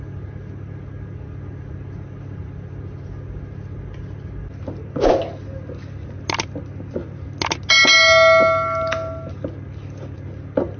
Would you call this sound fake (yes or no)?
no